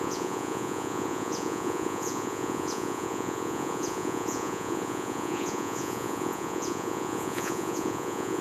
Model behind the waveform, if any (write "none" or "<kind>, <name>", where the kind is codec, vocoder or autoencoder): vocoder, Vocos